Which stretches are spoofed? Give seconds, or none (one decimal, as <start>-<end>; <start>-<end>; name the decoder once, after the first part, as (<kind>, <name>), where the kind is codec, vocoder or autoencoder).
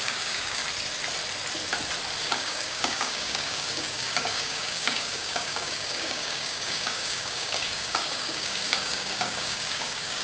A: 0.0-0.6 (codec, DAC); 2.2-10.2